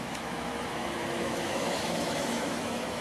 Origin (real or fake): fake